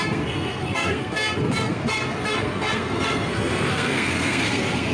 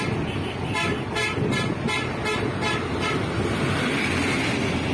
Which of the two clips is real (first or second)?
second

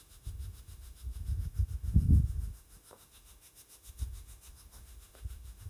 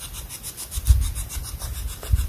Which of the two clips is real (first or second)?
second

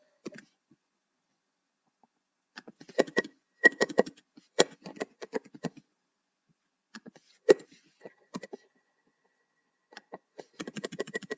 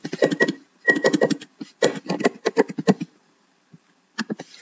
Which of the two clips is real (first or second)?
second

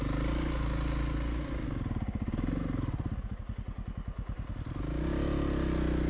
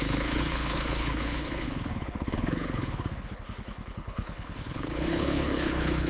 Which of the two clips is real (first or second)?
first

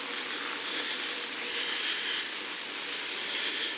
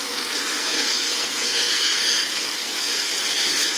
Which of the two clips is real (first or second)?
first